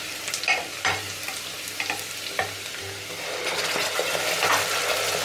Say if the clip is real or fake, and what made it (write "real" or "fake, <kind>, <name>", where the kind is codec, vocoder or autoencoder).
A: fake, vocoder, BigVGAN v2